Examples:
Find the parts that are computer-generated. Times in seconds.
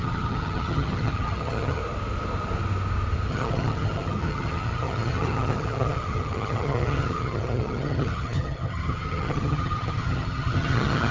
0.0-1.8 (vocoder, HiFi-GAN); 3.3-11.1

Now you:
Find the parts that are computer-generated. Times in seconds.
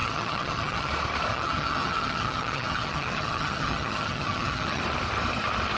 0.0-0.9 (vocoder, HiFi-GAN); 1.3-4.8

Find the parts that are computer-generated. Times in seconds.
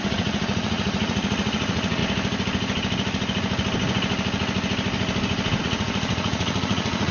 0.0-2.0 (vocoder, Vocos); 5.6-7.1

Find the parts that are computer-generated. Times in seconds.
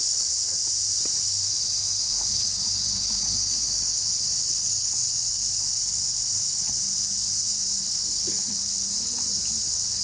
0.0-0.6 (codec, HILCodec); 1.2-10.0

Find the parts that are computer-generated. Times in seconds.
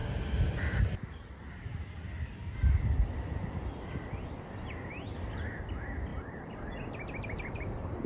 none